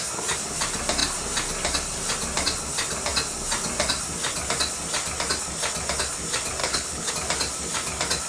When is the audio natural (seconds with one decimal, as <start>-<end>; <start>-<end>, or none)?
0.0-6.6; 7.1-8.3